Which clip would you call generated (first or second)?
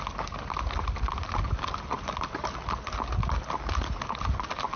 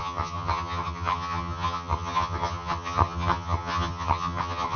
second